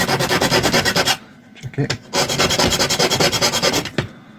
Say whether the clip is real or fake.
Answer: real